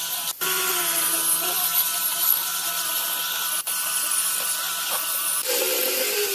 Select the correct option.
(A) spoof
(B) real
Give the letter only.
B